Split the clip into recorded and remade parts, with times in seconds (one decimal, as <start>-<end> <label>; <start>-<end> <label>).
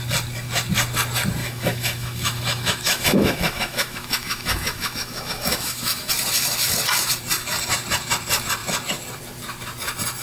0.0-1.4 recorded; 1.4-6.1 remade; 6.1-10.2 recorded